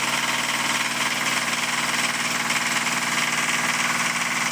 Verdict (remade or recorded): recorded